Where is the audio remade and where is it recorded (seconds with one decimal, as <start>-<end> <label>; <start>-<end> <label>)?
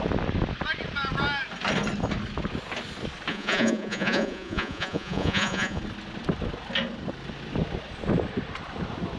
0.0-3.3 recorded; 3.3-5.8 remade; 5.8-9.2 recorded